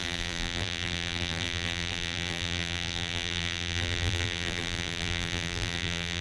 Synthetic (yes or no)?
yes